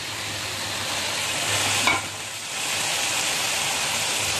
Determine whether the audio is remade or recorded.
remade